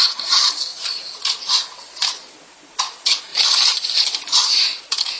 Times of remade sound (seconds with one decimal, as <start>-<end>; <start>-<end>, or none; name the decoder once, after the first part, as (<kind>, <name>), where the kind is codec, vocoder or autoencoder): 0.0-5.2 (vocoder, Vocos)